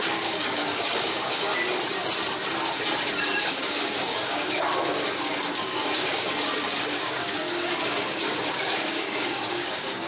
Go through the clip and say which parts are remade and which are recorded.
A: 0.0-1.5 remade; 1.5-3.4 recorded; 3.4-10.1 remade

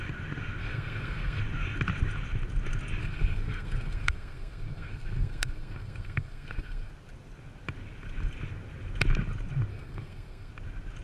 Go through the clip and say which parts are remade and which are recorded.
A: 0.0-0.6 recorded; 0.6-1.4 remade; 1.4-3.0 recorded; 3.0-6.9 remade; 6.9-9.7 recorded; 9.7-10.5 remade; 10.5-11.0 recorded

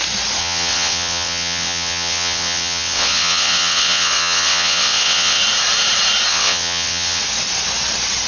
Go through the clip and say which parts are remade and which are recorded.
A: 0.0-0.4 recorded; 0.4-5.4 remade; 5.4-6.3 recorded; 6.3-7.2 remade; 7.2-8.3 recorded

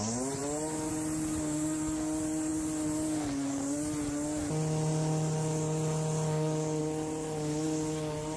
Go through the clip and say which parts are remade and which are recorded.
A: 0.0-8.4 recorded

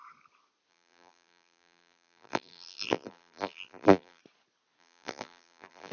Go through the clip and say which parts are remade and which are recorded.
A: 0.0-0.7 recorded; 0.7-4.2 remade; 4.2-4.8 recorded; 4.8-5.9 remade

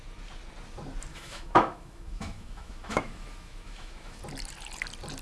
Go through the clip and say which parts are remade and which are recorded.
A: 0.0-1.1 recorded; 1.1-4.2 remade; 4.2-5.2 recorded